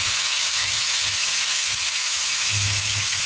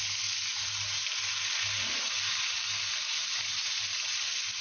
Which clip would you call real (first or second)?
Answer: second